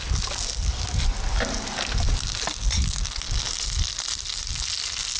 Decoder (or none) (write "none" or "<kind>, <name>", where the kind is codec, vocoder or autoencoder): none